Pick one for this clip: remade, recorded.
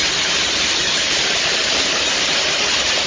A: remade